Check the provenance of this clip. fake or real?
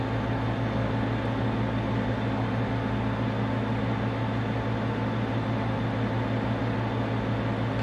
real